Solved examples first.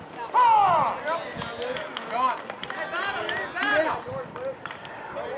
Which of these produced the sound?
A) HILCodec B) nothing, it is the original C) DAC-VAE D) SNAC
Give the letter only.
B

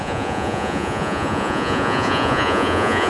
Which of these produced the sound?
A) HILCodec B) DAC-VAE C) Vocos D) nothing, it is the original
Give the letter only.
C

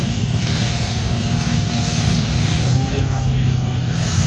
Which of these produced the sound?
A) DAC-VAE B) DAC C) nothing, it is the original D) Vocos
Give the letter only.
B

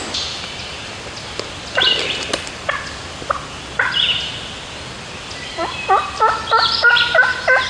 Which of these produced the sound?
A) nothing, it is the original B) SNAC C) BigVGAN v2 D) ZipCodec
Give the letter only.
A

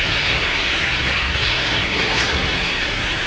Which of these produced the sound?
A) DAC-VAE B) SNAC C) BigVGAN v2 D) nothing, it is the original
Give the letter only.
B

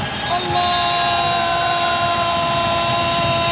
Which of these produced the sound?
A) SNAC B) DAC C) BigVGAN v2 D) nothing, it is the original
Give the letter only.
D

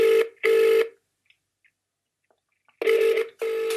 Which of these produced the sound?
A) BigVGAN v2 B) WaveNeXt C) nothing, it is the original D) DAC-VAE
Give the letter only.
C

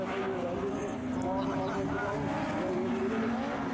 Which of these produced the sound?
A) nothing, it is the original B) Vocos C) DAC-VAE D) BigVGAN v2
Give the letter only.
A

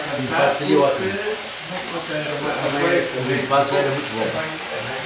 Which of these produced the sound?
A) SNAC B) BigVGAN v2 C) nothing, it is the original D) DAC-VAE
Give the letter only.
C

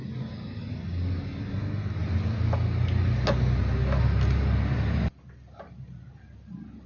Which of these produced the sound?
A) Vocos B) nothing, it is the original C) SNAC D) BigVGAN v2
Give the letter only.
B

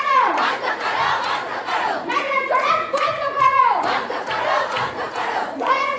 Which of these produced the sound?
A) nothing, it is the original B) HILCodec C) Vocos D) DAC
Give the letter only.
C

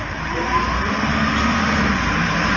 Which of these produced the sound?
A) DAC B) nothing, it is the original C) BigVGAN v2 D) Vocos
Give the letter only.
C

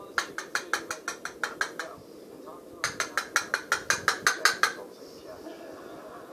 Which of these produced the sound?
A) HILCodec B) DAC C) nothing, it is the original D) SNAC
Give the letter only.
C